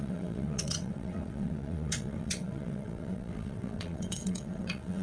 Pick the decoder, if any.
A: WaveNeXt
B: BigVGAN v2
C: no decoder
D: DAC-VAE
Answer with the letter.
A